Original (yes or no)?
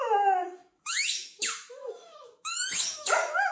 no